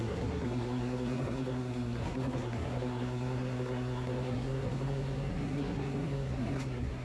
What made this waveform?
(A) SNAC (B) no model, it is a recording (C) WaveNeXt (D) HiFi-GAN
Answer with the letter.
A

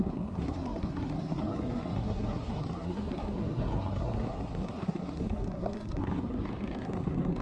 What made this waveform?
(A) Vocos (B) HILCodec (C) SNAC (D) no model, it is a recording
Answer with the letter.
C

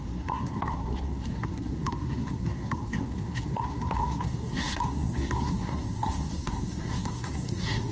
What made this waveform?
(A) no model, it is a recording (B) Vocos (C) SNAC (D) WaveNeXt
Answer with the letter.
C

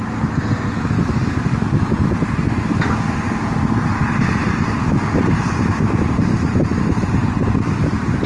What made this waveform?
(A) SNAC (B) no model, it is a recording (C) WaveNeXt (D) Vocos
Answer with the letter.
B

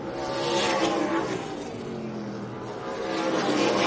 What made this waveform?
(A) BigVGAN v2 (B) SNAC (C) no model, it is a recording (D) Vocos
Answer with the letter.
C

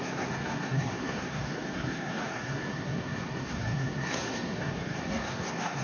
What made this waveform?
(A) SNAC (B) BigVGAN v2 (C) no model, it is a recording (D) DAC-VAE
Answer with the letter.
A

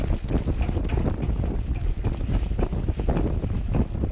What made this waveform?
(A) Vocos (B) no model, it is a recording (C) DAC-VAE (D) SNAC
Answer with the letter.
B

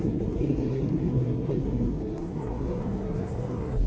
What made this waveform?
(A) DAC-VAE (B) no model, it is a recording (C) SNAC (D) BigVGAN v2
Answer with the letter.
C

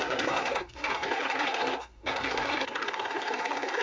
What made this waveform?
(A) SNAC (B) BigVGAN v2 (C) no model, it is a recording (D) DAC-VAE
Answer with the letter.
A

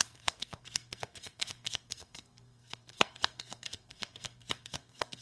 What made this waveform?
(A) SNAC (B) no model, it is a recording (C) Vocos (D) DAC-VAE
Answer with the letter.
A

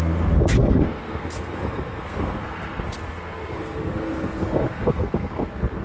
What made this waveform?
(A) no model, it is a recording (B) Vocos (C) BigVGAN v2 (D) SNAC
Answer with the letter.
D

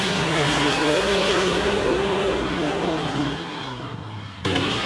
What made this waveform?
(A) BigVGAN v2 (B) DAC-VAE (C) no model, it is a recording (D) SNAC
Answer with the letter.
D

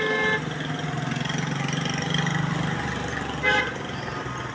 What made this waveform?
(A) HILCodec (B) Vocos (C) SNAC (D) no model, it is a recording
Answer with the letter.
D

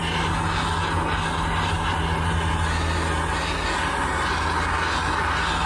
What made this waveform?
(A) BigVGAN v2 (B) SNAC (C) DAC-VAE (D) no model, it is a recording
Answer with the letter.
D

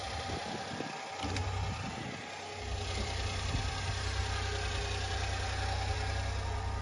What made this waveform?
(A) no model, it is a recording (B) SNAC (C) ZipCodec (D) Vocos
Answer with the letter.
A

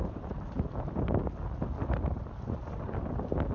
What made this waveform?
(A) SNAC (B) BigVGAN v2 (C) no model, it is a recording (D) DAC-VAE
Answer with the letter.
C